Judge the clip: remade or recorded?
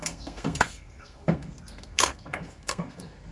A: remade